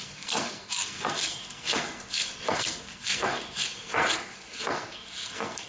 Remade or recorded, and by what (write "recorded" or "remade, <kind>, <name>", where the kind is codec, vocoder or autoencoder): remade, codec, SNAC